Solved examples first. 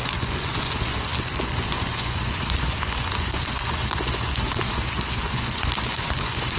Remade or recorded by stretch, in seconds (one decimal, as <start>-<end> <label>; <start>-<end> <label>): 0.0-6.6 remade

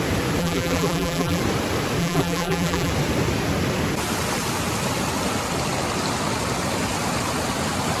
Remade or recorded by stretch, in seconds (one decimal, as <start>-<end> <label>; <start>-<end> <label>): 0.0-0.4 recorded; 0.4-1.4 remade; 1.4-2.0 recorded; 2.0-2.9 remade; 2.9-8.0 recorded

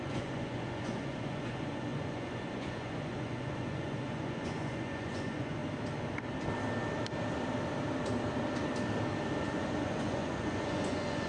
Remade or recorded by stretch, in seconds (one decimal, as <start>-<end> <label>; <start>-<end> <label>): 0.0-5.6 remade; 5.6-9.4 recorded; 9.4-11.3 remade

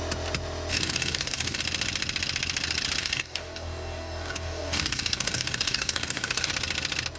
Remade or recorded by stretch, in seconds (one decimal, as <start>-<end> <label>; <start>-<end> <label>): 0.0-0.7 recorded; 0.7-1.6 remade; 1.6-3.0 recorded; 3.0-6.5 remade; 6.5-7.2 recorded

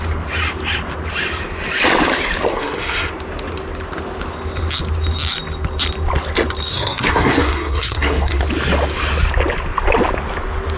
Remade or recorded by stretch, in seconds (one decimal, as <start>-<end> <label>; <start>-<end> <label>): 0.0-2.5 recorded; 2.5-3.1 remade; 3.1-6.7 recorded; 6.7-8.4 remade; 8.4-10.8 recorded